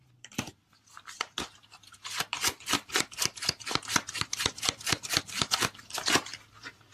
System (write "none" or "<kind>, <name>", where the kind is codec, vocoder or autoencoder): vocoder, BigVGAN v2